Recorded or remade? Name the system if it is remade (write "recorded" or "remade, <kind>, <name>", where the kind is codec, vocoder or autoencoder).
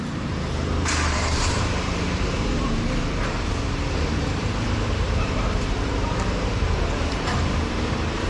remade, vocoder, BigVGAN v2